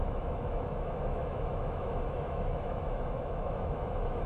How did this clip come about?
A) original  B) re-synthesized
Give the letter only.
B